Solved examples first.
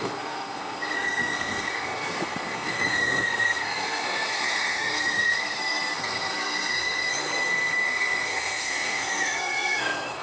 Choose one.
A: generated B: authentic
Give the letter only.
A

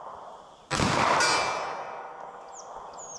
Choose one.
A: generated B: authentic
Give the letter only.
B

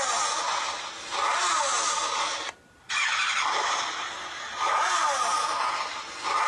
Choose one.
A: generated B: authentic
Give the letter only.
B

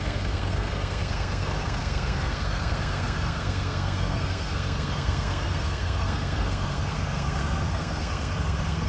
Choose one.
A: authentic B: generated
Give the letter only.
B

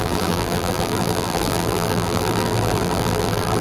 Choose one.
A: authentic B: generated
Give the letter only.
B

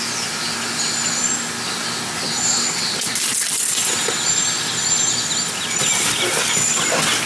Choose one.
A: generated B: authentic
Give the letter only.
B